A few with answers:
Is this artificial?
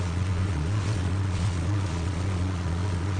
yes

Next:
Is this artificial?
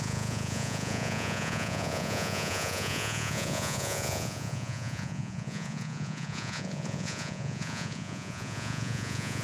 yes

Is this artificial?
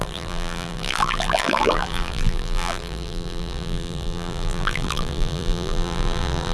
yes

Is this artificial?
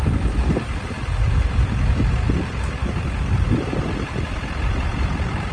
yes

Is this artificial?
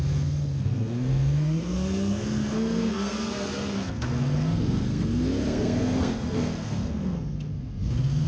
yes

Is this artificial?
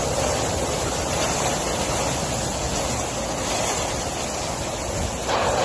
no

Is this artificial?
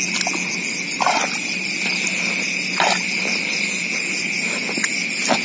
no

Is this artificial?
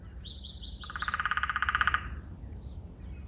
no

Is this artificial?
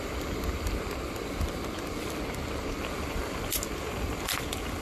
no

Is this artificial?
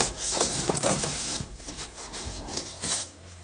yes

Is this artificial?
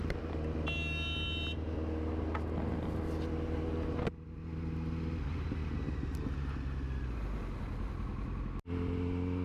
no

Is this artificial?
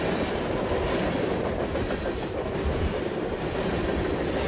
no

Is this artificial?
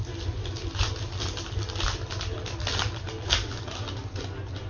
no